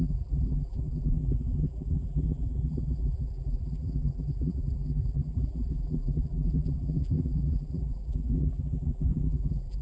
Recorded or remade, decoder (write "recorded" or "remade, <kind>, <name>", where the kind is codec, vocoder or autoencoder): remade, vocoder, BigVGAN v2